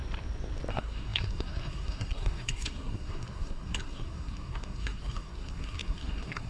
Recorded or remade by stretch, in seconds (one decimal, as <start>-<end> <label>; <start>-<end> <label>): 0.0-0.7 recorded; 0.7-6.5 remade

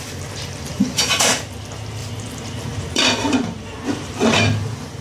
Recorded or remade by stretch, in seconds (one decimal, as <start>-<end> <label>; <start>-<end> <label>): 0.0-0.7 recorded; 0.7-1.3 remade; 1.3-2.0 recorded; 2.0-5.0 remade

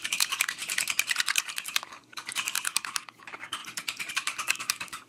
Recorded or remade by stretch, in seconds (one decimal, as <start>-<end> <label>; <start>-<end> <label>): 0.0-0.6 remade; 0.6-1.7 recorded; 1.7-3.6 remade; 3.6-4.1 recorded; 4.1-5.1 remade

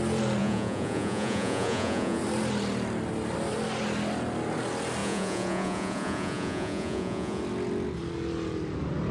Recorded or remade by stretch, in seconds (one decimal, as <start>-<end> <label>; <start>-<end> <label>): 0.0-0.4 recorded; 0.4-2.2 remade; 2.2-5.0 recorded; 5.0-7.4 remade; 7.4-9.1 recorded

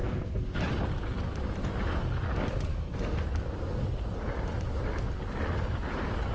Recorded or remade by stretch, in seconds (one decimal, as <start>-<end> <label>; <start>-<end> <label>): 0.0-0.6 remade; 0.6-2.7 recorded; 2.7-3.2 remade; 3.2-6.3 recorded

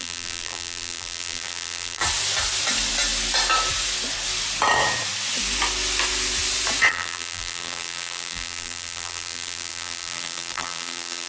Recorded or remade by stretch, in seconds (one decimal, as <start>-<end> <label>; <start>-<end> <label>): 0.0-2.0 remade; 2.0-6.9 recorded; 6.9-11.3 remade

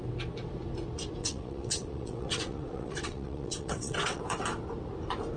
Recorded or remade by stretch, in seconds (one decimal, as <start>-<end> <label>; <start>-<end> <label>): 0.0-1.2 recorded; 1.2-4.2 remade; 4.2-5.4 recorded

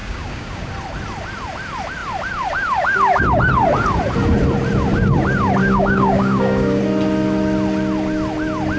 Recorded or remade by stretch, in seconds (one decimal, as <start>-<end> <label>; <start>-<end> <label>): 0.0-0.7 remade; 0.7-5.6 recorded; 5.6-6.8 remade; 6.8-8.8 recorded